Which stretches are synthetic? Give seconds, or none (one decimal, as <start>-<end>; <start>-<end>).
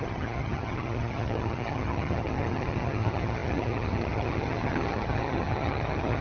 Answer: 0.0-6.2